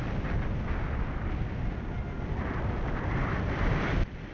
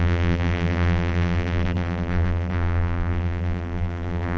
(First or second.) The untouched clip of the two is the first